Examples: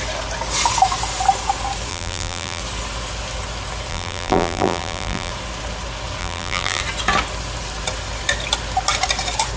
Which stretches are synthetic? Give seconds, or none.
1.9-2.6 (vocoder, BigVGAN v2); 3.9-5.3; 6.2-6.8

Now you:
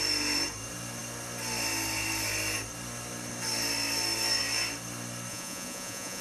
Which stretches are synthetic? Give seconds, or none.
5.3-6.2 (vocoder, Vocos)